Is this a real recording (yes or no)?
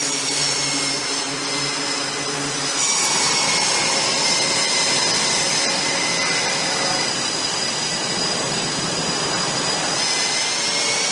yes